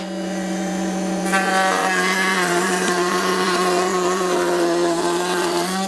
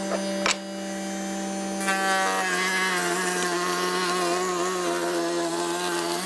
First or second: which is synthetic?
first